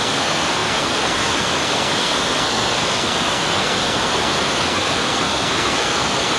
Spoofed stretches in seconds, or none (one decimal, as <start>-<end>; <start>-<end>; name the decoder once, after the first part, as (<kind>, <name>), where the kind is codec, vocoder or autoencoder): 0.0-6.4 (codec, SNAC)